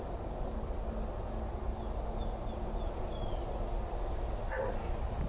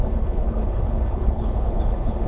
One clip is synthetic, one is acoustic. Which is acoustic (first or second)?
first